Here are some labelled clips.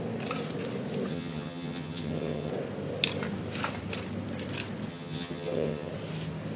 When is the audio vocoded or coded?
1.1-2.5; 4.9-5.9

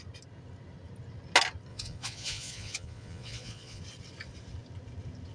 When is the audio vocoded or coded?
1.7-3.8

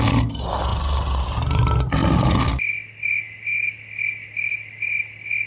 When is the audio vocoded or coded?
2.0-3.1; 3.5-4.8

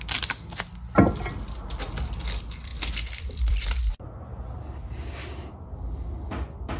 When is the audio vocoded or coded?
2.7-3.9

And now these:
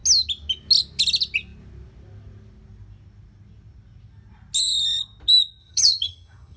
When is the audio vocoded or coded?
5.6-6.6

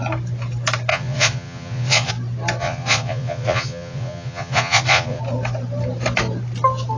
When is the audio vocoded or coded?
0.9-2.1; 2.6-5.2

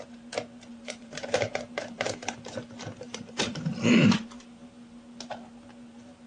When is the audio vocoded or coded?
0.7-2.3; 2.9-4.5